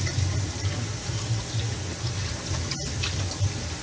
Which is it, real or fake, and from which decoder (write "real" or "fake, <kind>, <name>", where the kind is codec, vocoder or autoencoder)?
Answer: real